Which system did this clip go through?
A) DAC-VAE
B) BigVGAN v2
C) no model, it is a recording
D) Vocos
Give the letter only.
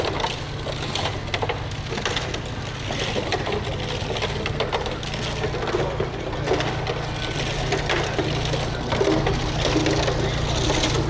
C